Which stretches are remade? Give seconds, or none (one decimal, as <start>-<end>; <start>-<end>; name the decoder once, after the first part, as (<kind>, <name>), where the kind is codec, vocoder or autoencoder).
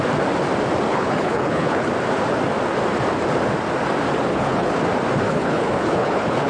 0.9-1.9 (codec, HILCodec); 4.3-4.8; 5.3-6.5